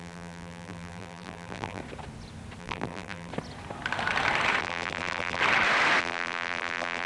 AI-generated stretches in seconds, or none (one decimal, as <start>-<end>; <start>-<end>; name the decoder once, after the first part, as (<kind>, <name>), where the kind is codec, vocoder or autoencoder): 0.0-1.8 (vocoder, BigVGAN v2); 2.6-3.3; 4.6-5.4; 6.0-7.1